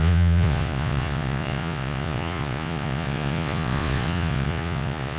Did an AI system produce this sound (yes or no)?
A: yes